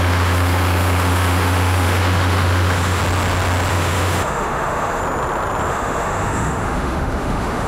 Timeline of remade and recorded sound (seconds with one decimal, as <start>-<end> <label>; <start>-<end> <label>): 0.0-3.0 remade; 3.0-3.7 recorded; 3.7-5.0 remade; 5.0-5.7 recorded; 5.7-7.7 remade